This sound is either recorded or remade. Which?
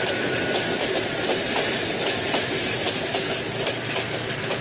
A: recorded